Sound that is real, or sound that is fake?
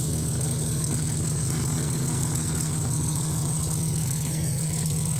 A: fake